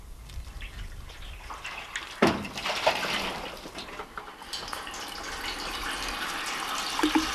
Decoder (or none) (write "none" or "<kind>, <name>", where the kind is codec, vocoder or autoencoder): none